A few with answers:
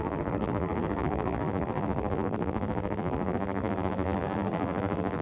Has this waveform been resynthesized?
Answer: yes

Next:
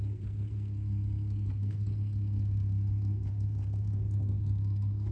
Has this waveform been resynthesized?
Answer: yes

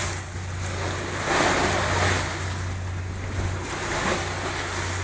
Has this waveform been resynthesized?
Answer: no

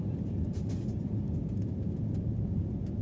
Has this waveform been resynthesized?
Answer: no